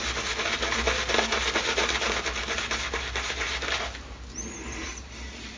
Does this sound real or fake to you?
real